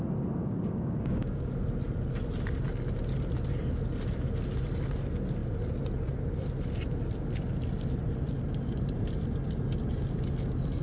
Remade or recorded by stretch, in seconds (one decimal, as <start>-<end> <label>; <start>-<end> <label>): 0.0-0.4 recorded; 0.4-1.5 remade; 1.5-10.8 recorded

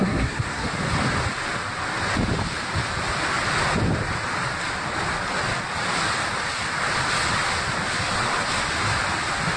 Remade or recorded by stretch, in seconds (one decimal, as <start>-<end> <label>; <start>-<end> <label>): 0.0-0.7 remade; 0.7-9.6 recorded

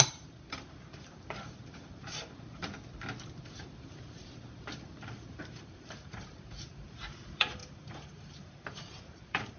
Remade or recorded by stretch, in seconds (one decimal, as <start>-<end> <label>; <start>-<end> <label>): 0.0-2.6 remade; 2.6-3.4 recorded; 3.4-9.6 remade

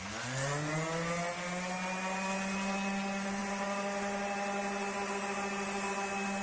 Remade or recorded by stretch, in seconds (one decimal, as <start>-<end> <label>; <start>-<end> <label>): 0.0-6.4 recorded

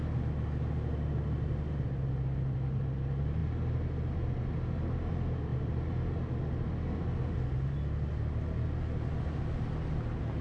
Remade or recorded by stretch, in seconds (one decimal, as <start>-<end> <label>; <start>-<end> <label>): 0.0-10.4 recorded

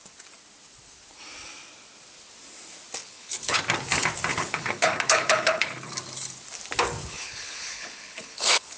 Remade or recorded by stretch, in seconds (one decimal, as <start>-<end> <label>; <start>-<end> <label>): 0.0-3.0 recorded; 3.0-3.6 remade; 3.6-4.3 recorded; 4.3-5.9 remade; 5.9-7.0 recorded; 7.0-8.8 remade